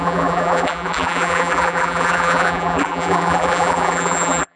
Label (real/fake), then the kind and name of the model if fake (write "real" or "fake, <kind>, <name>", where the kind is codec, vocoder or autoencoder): fake, vocoder, BigVGAN v2